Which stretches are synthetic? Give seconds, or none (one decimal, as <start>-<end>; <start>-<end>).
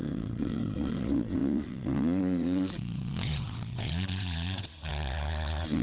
0.0-5.8